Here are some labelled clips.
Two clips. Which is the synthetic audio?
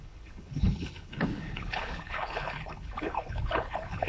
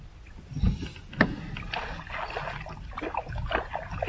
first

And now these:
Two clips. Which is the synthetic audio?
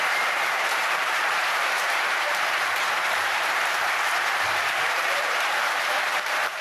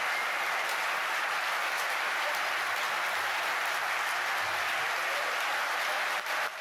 first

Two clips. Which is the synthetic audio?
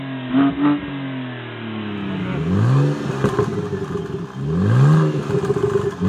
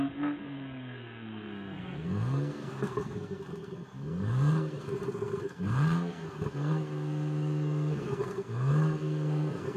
second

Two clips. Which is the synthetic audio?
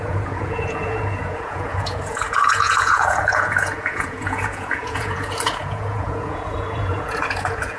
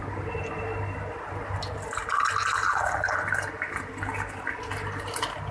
first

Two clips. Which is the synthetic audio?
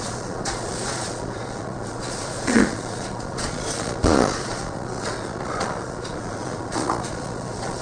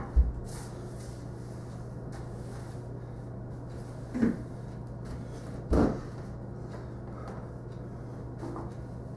first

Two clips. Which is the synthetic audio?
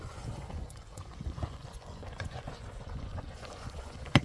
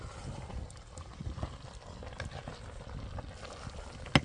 first